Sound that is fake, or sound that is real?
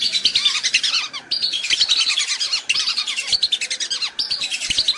real